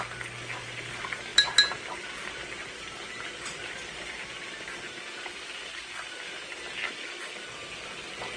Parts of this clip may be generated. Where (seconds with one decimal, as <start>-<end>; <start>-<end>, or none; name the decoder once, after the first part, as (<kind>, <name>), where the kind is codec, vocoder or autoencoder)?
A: none